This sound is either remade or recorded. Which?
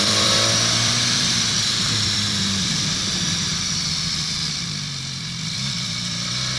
remade